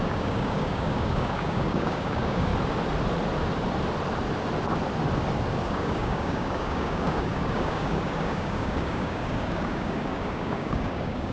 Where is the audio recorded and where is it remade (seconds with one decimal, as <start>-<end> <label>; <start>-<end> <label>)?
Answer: 0.0-2.5 remade; 2.5-5.5 recorded; 5.5-11.3 remade